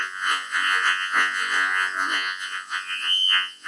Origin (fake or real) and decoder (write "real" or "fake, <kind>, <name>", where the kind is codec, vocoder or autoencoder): fake, vocoder, Vocos